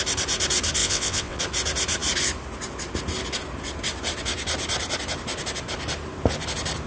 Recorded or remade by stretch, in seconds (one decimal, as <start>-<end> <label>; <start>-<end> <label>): 0.0-0.8 recorded; 0.8-1.4 remade; 1.4-6.9 recorded